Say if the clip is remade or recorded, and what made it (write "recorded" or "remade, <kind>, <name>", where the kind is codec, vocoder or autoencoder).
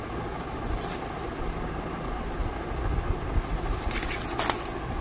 recorded